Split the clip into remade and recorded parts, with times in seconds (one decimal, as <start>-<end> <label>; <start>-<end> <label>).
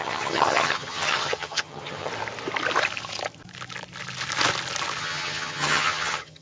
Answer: 0.0-2.1 remade; 2.1-5.0 recorded; 5.0-6.4 remade